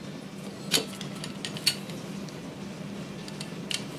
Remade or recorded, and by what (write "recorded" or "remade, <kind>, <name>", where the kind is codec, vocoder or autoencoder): recorded